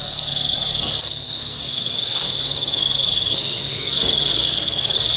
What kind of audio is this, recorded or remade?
remade